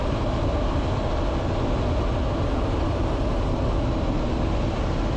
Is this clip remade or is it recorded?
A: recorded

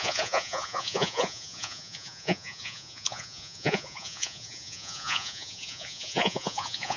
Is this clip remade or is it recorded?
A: remade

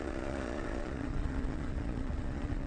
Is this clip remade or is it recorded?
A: remade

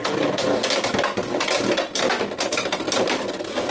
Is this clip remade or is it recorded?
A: recorded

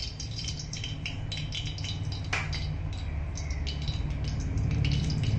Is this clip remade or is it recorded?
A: recorded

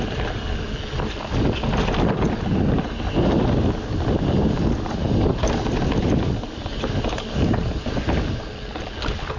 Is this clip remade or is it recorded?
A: recorded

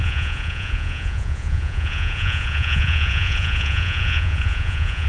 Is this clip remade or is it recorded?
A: remade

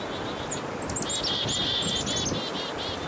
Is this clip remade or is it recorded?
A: recorded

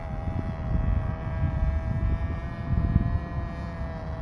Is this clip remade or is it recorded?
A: recorded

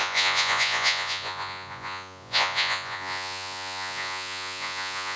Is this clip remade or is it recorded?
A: remade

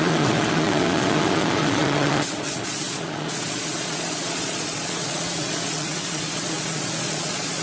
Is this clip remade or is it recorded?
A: remade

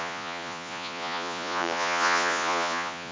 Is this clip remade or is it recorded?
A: remade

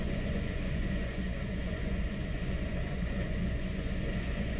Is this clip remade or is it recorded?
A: remade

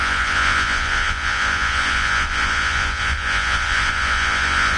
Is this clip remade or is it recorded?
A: remade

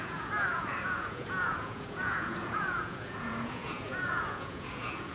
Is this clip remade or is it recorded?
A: remade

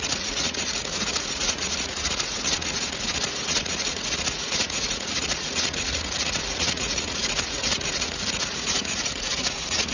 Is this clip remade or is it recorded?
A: remade